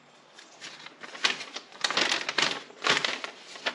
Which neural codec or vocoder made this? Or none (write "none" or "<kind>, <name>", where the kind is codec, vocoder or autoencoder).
none